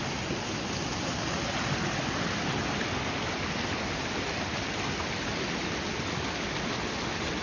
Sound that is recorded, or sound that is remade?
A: recorded